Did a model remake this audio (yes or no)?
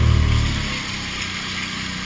no